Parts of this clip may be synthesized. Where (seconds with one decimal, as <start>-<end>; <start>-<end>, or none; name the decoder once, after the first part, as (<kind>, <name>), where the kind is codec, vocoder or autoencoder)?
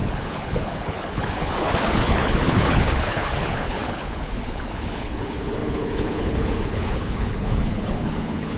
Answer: 0.0-8.6 (codec, HILCodec)